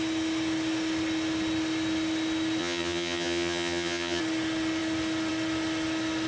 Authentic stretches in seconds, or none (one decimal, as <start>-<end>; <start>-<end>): 0.0-2.6; 4.2-6.3